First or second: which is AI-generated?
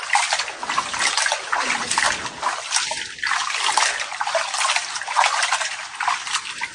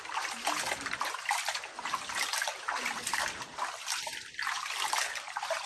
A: second